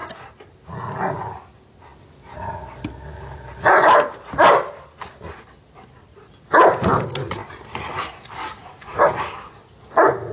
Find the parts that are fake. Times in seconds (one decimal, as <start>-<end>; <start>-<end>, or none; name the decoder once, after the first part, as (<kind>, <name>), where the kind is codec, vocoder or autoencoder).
8.6-9.5 (codec, DAC)